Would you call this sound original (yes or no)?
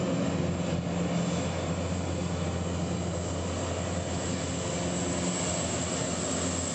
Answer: yes